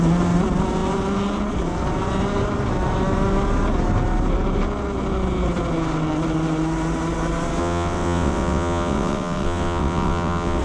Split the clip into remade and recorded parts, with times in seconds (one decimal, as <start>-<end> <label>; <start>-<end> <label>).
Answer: 0.0-7.6 recorded; 7.6-10.6 remade